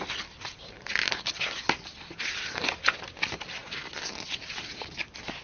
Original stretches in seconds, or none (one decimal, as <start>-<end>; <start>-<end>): 0.0-5.4